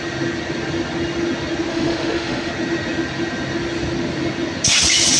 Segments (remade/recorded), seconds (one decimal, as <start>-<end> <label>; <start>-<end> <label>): 0.0-1.7 recorded; 1.7-2.5 remade; 2.5-5.2 recorded

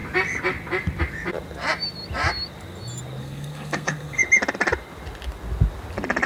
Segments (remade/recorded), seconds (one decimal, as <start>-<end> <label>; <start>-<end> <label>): 0.0-3.2 recorded; 3.2-4.2 remade; 4.2-6.3 recorded

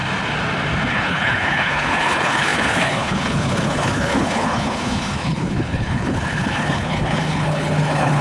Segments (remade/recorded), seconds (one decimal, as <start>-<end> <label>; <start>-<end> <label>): 0.0-0.9 recorded; 0.9-8.2 remade

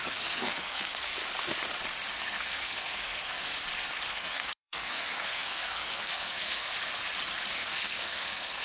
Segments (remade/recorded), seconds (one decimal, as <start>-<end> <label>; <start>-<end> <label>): 0.0-1.1 remade; 1.1-2.2 recorded; 2.2-3.5 remade; 3.5-4.1 recorded; 4.1-6.7 remade; 6.7-7.5 recorded; 7.5-8.6 remade

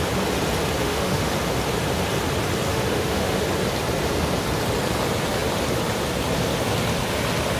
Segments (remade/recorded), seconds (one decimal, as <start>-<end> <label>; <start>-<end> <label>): 0.0-0.8 recorded; 0.8-1.3 remade; 1.3-2.7 recorded; 2.7-3.4 remade; 3.4-7.6 recorded

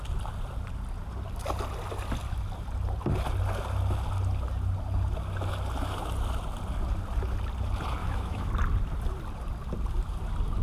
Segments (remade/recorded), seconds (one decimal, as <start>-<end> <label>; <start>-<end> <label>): 0.0-8.0 recorded; 8.0-8.5 remade; 8.5-10.6 recorded

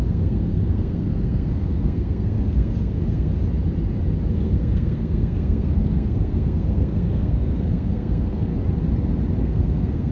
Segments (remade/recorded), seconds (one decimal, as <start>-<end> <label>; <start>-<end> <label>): 0.0-3.3 remade; 3.3-4.3 recorded; 4.3-8.5 remade; 8.5-9.4 recorded; 9.4-10.1 remade

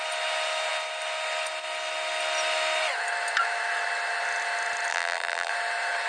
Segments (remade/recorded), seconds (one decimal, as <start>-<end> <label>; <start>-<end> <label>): 0.0-4.9 recorded; 4.9-5.5 remade; 5.5-6.1 recorded